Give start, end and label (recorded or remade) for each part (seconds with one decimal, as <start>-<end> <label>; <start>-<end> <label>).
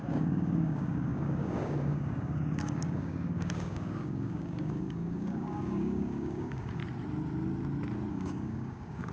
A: 0.0-6.8 remade; 6.8-8.1 recorded; 8.1-9.1 remade